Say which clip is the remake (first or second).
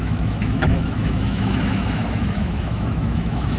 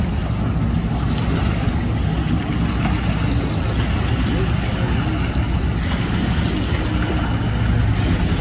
first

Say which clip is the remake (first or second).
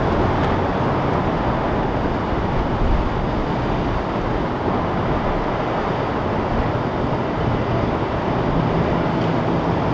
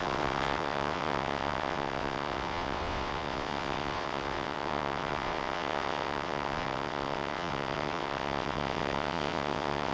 second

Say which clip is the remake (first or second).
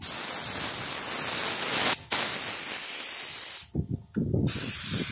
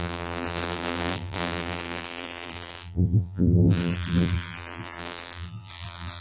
second